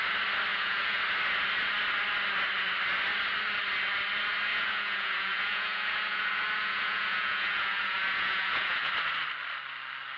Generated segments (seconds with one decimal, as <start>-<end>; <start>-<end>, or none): 0.5-1.0; 4.5-8.9